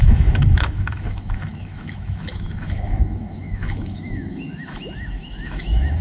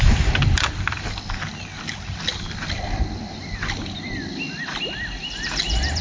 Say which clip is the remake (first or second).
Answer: first